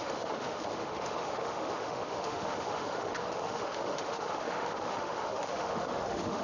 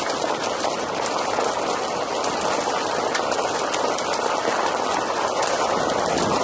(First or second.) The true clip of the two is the second